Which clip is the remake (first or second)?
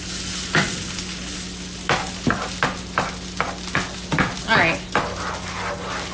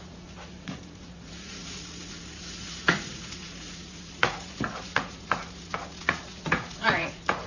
second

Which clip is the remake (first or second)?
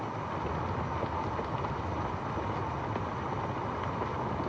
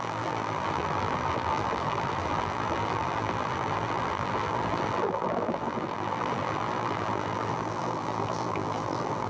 second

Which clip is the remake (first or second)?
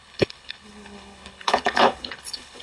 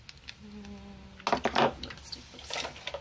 first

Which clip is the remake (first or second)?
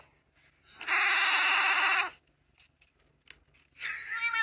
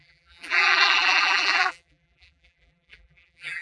second